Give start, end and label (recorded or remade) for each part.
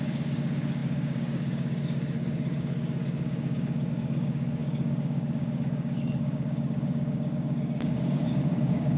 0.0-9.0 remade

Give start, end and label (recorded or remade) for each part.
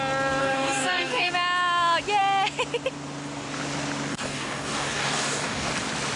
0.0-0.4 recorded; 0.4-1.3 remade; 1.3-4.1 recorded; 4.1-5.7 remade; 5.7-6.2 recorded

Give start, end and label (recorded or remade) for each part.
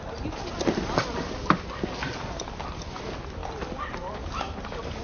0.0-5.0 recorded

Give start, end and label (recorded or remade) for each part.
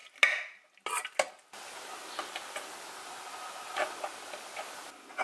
0.0-5.2 recorded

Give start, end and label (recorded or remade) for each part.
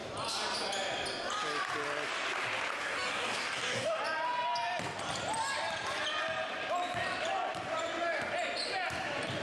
0.0-2.8 recorded; 2.8-4.0 remade; 4.0-9.4 recorded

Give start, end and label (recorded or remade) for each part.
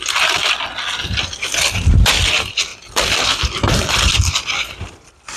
0.0-5.4 recorded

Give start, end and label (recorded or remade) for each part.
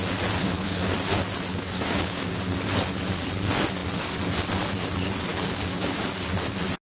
0.0-0.4 recorded; 0.4-0.9 remade; 0.9-1.5 recorded; 1.5-2.4 remade; 2.4-5.3 recorded; 5.3-6.0 remade; 6.0-6.8 recorded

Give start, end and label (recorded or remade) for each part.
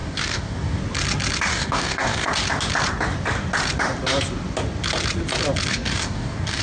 0.0-0.8 remade; 0.8-1.5 recorded; 1.5-2.3 remade; 2.3-5.7 recorded; 5.7-6.6 remade